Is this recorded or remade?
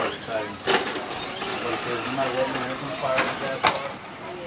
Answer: recorded